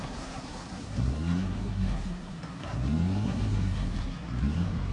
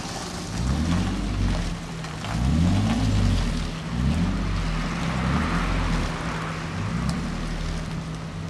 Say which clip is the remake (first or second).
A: first